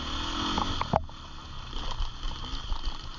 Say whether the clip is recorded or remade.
recorded